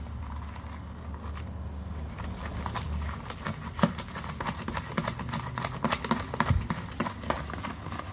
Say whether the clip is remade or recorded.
recorded